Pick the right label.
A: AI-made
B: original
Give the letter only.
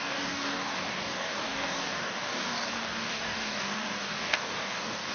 A